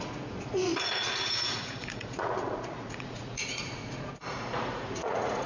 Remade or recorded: remade